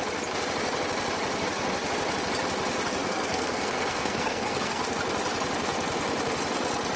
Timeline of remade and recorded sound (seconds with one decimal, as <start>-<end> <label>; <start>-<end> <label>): 0.0-3.0 recorded; 3.0-4.8 remade; 4.8-7.0 recorded

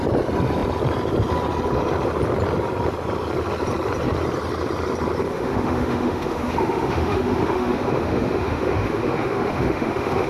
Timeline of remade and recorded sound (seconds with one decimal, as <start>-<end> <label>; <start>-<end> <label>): 0.0-5.3 recorded; 5.3-10.3 remade

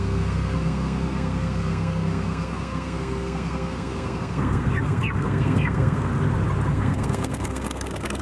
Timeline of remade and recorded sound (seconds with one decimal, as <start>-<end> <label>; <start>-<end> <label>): 0.0-6.1 remade; 6.1-6.7 recorded; 6.7-8.2 remade

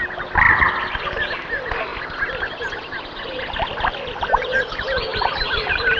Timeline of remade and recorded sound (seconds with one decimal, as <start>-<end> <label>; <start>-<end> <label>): 0.0-6.0 recorded

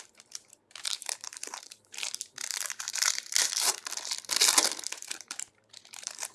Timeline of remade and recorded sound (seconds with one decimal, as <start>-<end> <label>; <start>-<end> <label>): 0.0-3.8 remade; 3.8-4.9 recorded; 4.9-6.3 remade

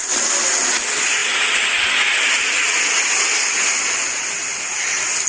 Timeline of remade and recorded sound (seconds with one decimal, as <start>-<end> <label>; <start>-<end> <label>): 0.0-5.3 recorded

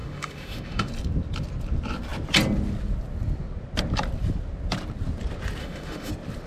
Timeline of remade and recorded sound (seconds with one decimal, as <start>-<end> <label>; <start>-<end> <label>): 0.0-0.9 remade; 0.9-5.6 recorded; 5.6-6.1 remade; 6.1-6.5 recorded

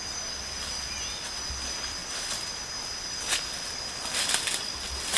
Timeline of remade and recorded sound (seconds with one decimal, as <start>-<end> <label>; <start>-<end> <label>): 0.0-5.2 recorded